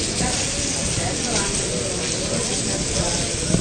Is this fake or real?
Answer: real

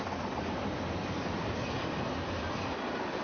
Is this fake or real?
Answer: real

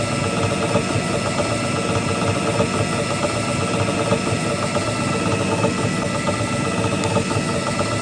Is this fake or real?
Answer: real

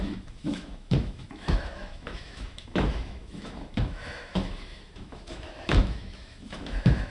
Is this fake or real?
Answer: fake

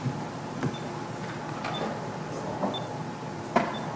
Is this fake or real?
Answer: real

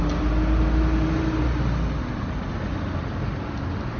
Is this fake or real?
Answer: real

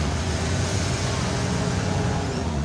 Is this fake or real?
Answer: fake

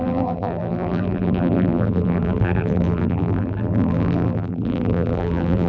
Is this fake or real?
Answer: fake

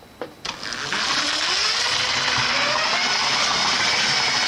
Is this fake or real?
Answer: real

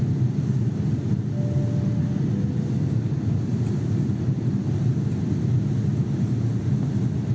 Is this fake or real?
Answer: real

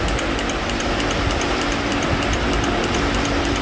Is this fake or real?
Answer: real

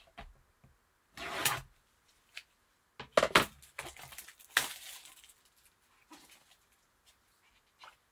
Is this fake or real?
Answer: real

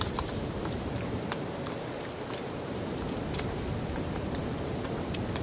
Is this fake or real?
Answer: fake